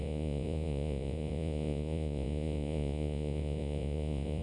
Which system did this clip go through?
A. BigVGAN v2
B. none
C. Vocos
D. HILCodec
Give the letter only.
C